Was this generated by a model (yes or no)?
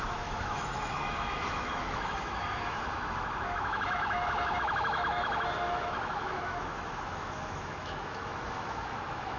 yes